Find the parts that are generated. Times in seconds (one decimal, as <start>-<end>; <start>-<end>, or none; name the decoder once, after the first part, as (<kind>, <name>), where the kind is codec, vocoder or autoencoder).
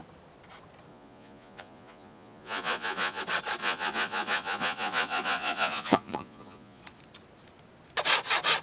0.9-3.2 (vocoder, Vocos); 3.6-6.8